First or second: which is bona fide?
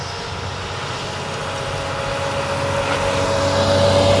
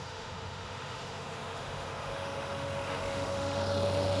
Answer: first